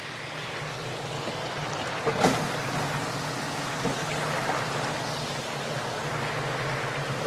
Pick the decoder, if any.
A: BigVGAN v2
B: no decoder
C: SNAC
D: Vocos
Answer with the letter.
B